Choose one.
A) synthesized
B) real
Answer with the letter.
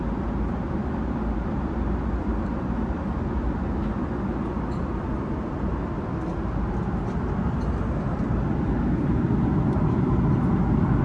B